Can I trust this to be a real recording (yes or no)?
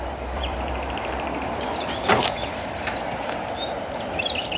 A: no